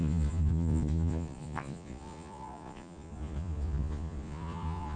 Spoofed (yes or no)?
yes